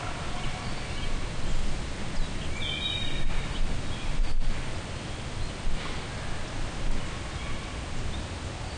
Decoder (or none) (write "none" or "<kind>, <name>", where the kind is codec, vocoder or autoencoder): none